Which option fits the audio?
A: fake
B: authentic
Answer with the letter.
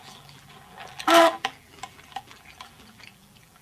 A